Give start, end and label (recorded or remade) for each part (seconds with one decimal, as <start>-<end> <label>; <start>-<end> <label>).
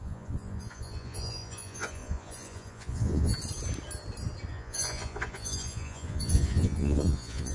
0.0-3.3 remade; 3.3-4.5 recorded; 4.5-7.5 remade